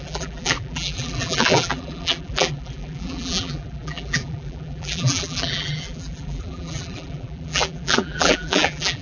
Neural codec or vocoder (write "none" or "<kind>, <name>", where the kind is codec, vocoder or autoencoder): vocoder, BigVGAN v2